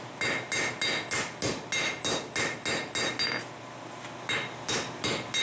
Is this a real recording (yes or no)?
yes